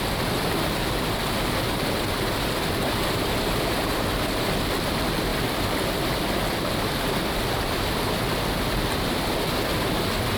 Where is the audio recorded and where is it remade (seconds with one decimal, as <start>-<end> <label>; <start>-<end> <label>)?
0.0-10.4 recorded